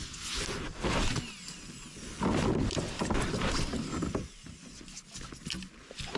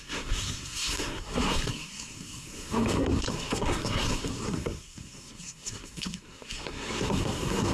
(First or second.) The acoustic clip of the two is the first